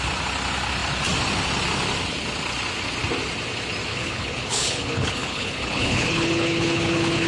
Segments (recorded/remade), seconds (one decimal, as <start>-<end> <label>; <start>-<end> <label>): 0.0-3.9 recorded; 3.9-7.3 remade